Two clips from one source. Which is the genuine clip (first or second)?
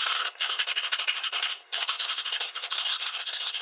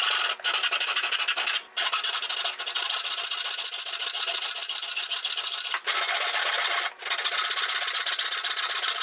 second